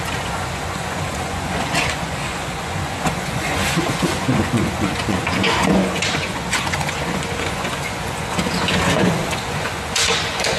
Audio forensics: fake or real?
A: fake